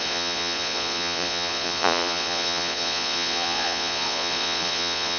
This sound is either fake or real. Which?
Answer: fake